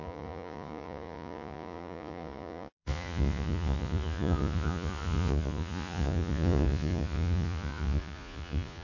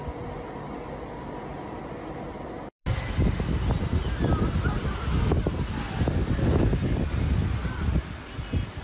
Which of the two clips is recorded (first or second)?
second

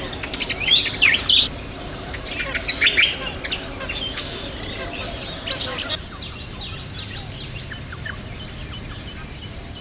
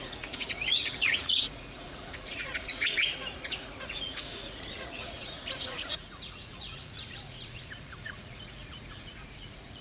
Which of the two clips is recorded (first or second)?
first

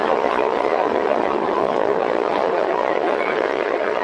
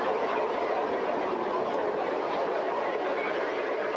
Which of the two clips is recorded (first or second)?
second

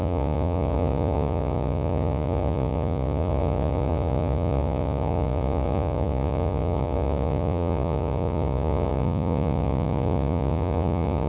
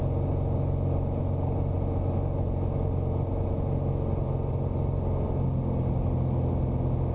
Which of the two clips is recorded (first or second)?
second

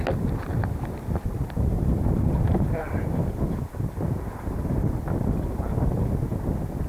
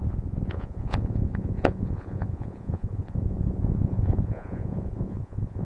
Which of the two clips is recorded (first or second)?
first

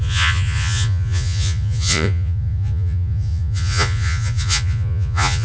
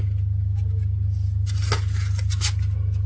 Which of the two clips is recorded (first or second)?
second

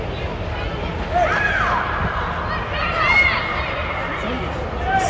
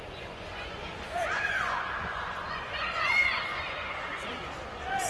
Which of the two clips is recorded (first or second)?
first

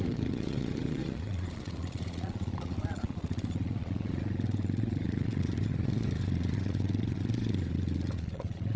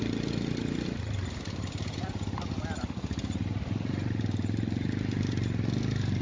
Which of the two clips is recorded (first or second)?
second